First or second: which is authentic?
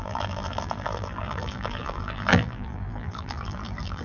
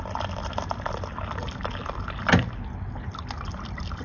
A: second